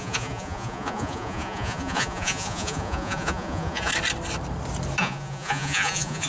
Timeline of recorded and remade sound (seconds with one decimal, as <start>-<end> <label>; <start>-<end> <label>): 0.0-3.9 remade; 3.9-5.0 recorded; 5.0-6.3 remade